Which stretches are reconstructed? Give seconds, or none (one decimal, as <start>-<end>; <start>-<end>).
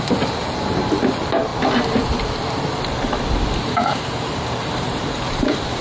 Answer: 0.0-1.5; 2.8-5.8